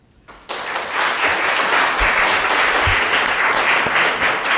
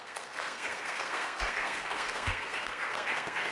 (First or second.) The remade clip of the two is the second